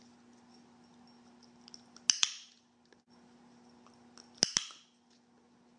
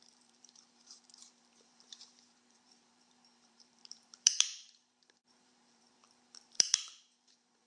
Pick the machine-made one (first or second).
second